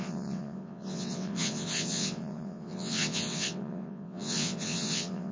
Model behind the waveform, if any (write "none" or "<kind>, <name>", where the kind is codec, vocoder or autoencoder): vocoder, WaveNeXt